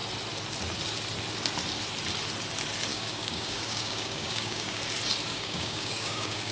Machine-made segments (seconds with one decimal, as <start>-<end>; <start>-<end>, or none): 2.9-4.8; 5.3-6.5